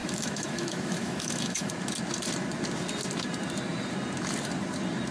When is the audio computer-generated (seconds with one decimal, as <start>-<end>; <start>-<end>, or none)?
0.0-1.7